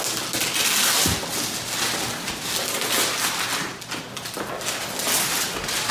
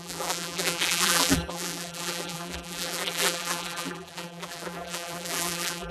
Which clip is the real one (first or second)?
first